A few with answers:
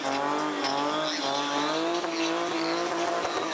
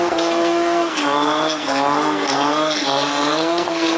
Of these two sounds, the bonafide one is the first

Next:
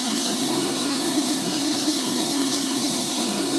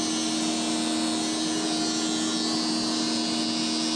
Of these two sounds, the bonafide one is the second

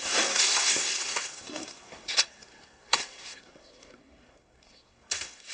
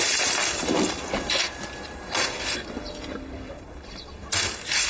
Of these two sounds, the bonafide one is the second